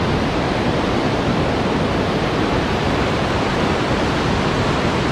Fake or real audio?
real